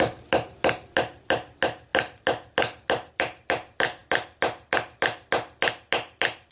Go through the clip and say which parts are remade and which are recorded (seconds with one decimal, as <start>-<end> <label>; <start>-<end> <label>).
0.0-6.5 recorded